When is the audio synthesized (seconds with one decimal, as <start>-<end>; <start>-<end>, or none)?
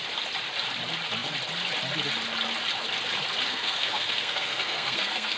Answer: 3.5-5.4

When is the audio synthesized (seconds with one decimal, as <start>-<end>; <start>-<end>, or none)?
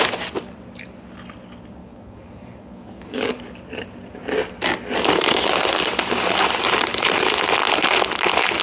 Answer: 1.8-3.4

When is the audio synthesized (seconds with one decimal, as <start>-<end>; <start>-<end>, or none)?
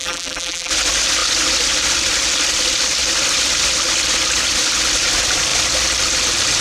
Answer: 0.0-0.7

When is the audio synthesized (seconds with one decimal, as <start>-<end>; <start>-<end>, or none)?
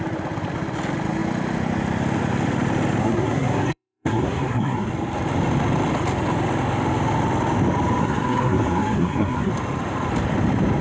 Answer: 3.0-4.9; 8.0-9.5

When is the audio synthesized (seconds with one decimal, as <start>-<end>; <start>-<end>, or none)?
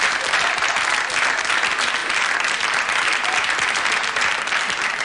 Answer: 2.0-3.9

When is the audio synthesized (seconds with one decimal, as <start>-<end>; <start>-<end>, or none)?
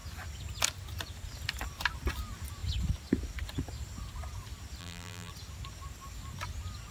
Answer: 4.8-5.3